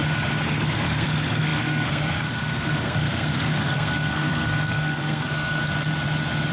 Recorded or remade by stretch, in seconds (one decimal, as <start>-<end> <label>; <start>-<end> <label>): 0.0-0.5 recorded; 0.5-5.6 remade; 5.6-6.5 recorded